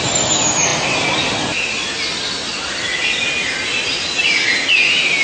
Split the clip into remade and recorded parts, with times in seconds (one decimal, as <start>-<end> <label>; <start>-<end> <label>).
0.0-5.2 recorded